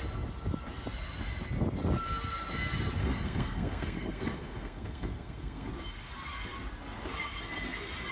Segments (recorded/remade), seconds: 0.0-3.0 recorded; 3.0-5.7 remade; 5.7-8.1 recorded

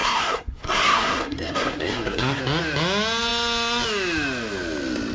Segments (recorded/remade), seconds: 0.0-2.4 remade; 2.4-5.1 recorded

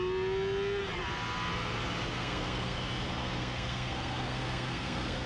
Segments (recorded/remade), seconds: 0.0-2.1 recorded; 2.1-2.8 remade; 2.8-3.2 recorded; 3.2-5.3 remade

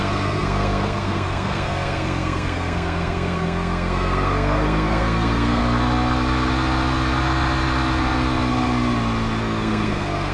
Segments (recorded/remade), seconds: 0.0-5.6 remade; 5.6-9.4 recorded; 9.4-10.3 remade

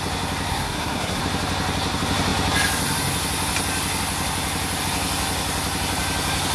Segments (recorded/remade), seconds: 0.0-0.5 recorded; 0.5-1.2 remade; 1.2-6.5 recorded

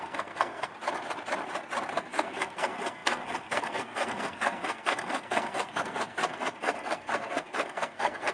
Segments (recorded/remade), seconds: 0.0-0.7 remade; 0.7-1.9 recorded; 1.9-8.3 remade

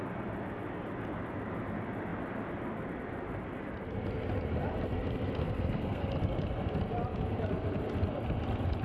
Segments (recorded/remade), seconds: 0.0-5.4 recorded; 5.4-6.1 remade; 6.1-8.8 recorded